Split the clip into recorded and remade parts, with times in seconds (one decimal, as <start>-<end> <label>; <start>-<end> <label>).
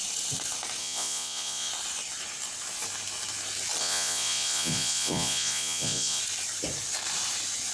0.0-0.8 recorded; 0.8-1.7 remade; 1.7-3.8 recorded; 3.8-6.2 remade; 6.2-7.7 recorded